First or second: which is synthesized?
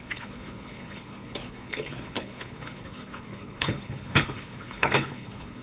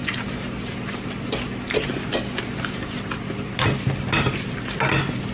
first